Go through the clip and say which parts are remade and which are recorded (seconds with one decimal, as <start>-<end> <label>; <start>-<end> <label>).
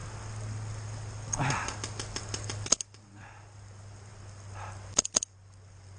0.0-6.0 recorded